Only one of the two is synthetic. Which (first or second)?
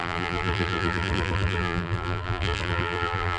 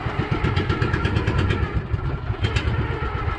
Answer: first